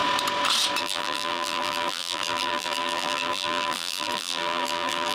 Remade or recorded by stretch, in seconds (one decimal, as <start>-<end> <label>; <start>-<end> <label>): 0.0-0.8 recorded; 0.8-5.1 remade